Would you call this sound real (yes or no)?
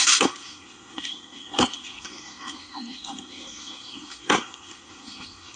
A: no